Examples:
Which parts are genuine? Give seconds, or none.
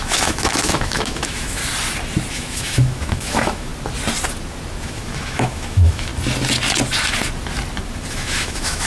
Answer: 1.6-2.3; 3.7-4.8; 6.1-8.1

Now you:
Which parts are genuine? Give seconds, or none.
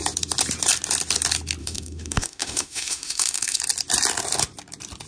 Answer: 0.0-1.6; 3.6-5.1